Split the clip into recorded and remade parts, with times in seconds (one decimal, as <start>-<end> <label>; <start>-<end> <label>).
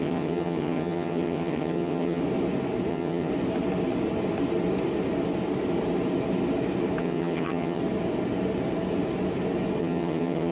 0.0-2.2 remade; 2.2-2.9 recorded; 2.9-3.3 remade; 3.3-7.0 recorded; 7.0-7.8 remade; 7.8-9.8 recorded; 9.8-10.5 remade